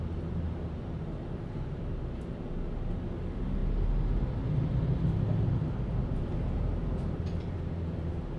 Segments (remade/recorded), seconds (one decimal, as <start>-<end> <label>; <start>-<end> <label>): 0.0-8.4 recorded